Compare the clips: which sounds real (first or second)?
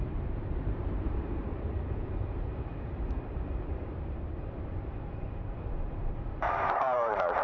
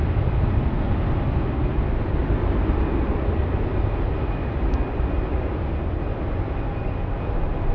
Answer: second